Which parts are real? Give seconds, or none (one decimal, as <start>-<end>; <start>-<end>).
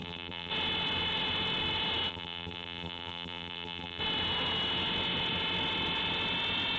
0.5-2.1; 4.0-6.8